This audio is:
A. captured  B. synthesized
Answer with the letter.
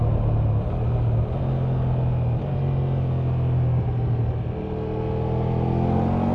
A